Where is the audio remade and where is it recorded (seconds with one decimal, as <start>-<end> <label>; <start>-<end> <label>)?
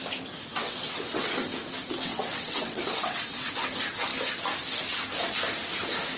0.0-0.5 recorded; 0.5-1.3 remade; 1.3-2.1 recorded; 2.1-3.5 remade; 3.5-6.2 recorded